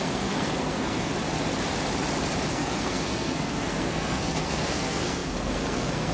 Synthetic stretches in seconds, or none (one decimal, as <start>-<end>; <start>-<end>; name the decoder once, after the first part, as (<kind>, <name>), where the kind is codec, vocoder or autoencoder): 0.0-1.1 (codec, SNAC); 2.5-6.1